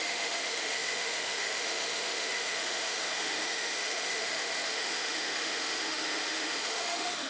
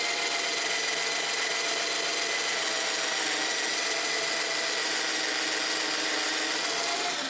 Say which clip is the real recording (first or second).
second